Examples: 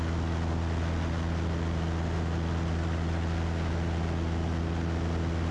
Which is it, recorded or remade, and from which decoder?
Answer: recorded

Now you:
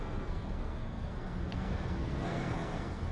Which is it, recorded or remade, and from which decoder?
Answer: remade, codec, SNAC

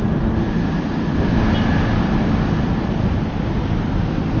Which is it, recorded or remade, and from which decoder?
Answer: recorded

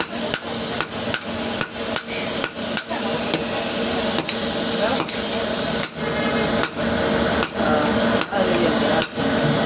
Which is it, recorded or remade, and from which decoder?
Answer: recorded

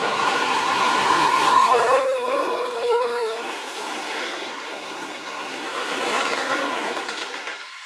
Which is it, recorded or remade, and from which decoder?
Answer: remade, codec, SNAC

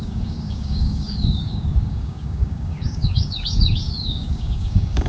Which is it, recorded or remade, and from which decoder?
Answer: remade, codec, DAC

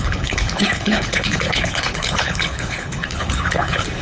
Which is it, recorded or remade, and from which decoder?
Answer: remade, codec, HILCodec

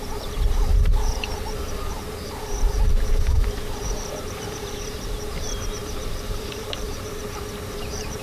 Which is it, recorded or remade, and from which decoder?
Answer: remade, vocoder, BigVGAN v2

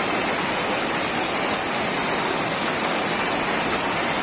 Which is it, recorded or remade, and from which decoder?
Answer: recorded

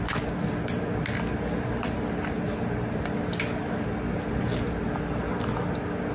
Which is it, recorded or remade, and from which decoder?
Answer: recorded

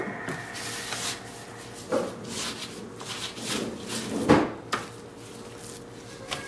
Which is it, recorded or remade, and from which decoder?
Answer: recorded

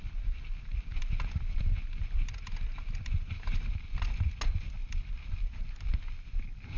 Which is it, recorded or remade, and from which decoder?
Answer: recorded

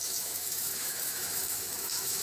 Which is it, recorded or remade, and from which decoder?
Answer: remade, autoencoder, DAC-VAE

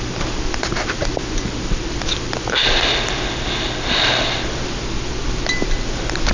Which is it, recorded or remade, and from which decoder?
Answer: recorded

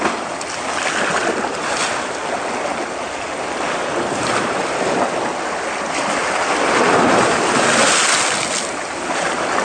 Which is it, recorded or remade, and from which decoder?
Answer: recorded